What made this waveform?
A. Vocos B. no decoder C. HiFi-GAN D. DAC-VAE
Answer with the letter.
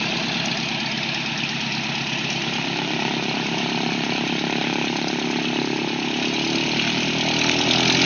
B